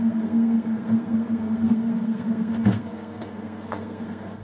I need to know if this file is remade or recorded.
remade